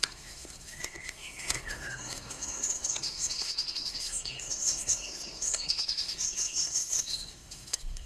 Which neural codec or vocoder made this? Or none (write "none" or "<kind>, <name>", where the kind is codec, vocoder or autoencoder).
codec, SNAC